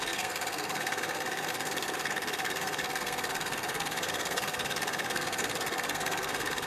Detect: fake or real fake